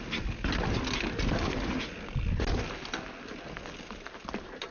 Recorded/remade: recorded